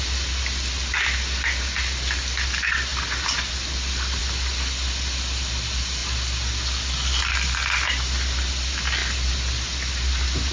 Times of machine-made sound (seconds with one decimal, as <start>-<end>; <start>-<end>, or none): none